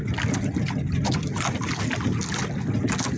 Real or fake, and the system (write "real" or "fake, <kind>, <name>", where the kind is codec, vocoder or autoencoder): real